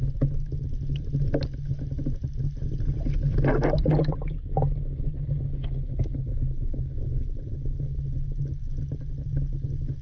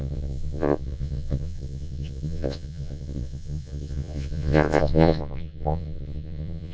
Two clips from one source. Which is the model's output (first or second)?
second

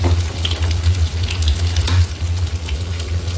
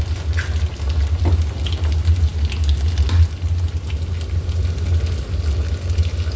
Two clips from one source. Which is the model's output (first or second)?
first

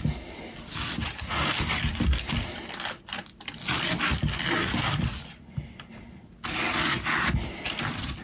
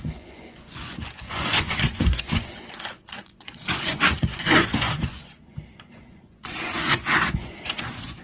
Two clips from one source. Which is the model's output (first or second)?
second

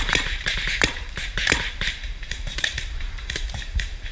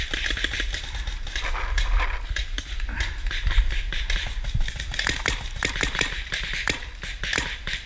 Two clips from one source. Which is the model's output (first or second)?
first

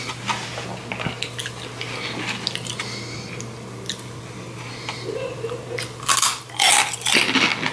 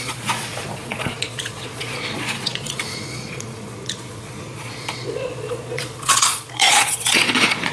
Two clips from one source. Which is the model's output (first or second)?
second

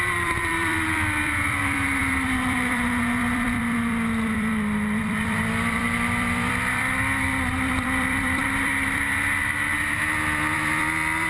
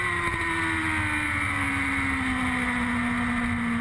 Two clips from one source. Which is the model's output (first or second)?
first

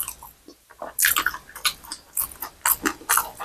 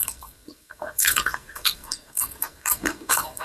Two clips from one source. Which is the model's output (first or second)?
second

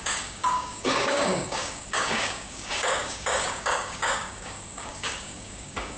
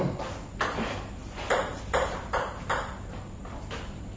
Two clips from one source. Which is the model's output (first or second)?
first